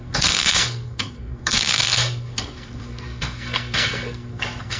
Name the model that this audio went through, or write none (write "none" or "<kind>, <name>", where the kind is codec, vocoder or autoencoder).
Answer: codec, SNAC